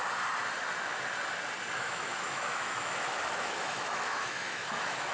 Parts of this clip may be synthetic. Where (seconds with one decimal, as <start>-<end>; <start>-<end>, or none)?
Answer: 1.7-5.1